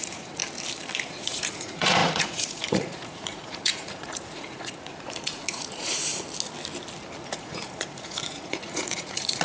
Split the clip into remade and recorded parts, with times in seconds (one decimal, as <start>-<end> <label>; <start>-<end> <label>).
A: 0.0-0.4 remade; 0.4-1.1 recorded; 1.1-6.1 remade; 6.1-7.3 recorded; 7.3-9.4 remade